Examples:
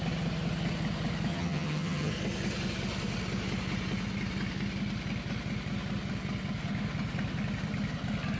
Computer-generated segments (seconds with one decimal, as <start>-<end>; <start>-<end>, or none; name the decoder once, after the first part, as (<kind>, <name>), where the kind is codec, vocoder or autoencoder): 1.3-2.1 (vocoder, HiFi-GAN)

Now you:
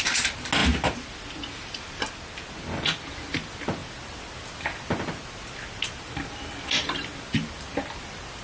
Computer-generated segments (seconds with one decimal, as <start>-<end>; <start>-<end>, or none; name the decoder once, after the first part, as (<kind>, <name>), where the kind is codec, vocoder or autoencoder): none

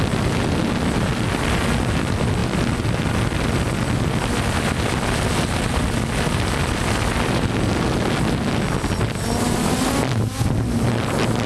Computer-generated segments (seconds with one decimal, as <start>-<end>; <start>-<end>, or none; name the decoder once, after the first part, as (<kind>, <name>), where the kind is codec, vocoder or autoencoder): none